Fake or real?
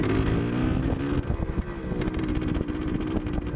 real